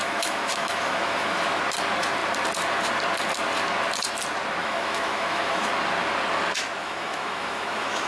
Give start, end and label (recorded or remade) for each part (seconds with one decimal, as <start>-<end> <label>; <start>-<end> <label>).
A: 0.0-1.6 remade; 1.6-4.6 recorded; 4.6-5.7 remade; 5.7-6.8 recorded; 6.8-8.1 remade